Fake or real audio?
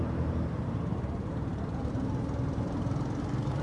fake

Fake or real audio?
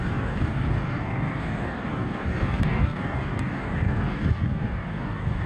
fake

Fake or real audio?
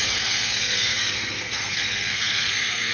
fake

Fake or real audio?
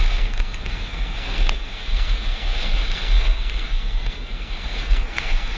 fake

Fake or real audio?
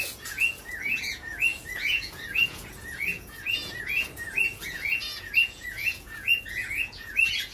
fake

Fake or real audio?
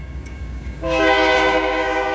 fake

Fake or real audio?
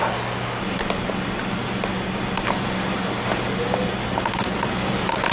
real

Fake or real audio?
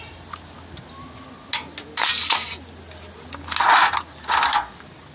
real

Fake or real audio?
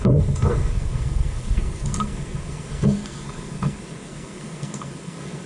fake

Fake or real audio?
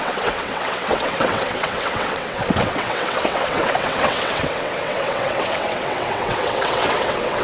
fake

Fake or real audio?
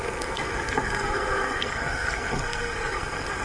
fake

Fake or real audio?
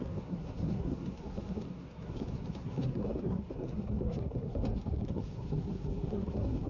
fake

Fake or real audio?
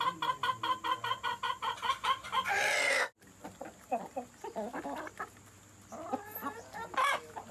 real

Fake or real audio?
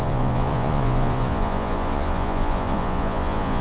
fake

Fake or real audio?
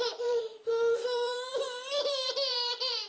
fake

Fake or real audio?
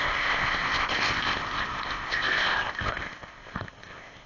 fake